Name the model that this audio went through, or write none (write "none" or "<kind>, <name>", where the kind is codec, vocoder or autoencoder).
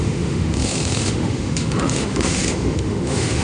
autoencoder, DAC-VAE